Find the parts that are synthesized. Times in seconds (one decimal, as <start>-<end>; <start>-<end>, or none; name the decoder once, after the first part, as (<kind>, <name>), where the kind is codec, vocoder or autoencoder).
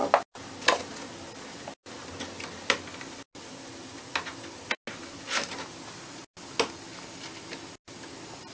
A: none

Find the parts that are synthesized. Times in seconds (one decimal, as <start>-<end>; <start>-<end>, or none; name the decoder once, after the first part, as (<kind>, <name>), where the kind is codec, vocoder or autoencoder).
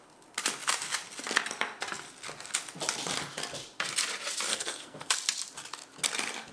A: 4.5-5.1 (codec, SNAC)